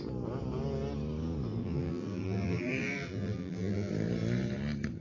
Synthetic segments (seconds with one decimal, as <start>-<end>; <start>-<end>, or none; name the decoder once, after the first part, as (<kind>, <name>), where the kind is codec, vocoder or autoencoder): 1.6-3.9 (vocoder, BigVGAN v2)